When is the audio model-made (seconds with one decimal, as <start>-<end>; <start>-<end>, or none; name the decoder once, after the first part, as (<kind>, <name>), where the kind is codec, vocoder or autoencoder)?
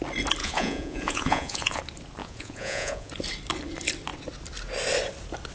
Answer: 0.4-1.8 (vocoder, Vocos); 2.2-3.1